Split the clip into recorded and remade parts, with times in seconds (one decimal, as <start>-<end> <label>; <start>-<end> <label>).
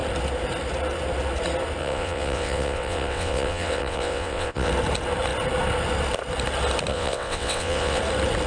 0.0-1.8 recorded; 1.8-4.7 remade; 4.7-6.9 recorded; 6.9-8.0 remade; 8.0-8.5 recorded